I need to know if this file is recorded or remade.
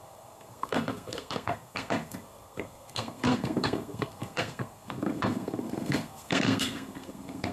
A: remade